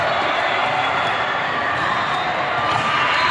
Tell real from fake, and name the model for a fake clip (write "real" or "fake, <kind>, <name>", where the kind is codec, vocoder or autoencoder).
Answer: real